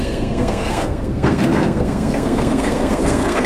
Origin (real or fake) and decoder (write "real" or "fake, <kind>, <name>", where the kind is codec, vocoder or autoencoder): fake, codec, SNAC